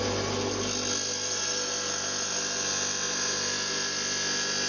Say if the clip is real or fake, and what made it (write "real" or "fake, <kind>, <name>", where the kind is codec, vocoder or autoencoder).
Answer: real